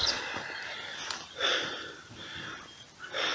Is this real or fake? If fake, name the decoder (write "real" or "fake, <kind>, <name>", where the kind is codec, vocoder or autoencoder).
real